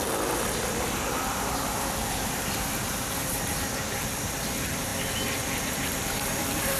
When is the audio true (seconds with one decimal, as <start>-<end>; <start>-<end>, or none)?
4.9-5.5